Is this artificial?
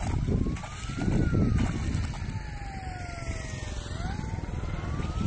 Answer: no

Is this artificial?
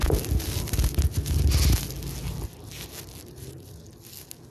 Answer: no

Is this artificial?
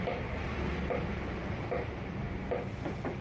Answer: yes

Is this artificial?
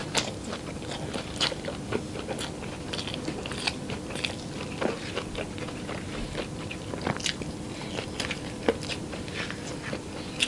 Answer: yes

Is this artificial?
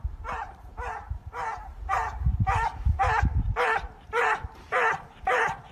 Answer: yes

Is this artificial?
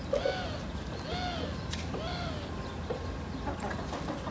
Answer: no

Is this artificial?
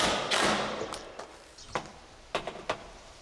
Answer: no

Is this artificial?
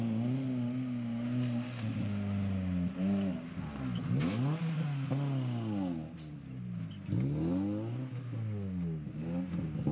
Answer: no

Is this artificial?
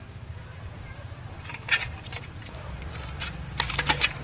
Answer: yes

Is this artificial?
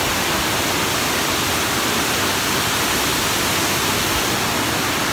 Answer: no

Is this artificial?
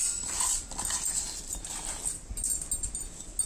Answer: no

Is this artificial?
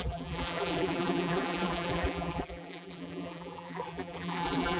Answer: yes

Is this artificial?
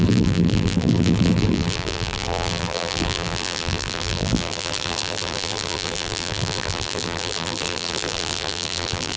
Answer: yes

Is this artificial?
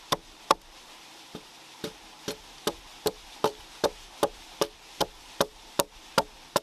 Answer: yes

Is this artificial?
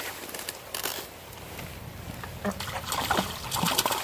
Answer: no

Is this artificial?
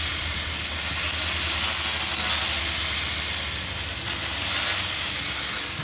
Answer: no